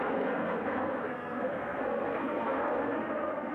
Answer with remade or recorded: remade